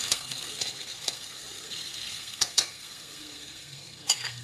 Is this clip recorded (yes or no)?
no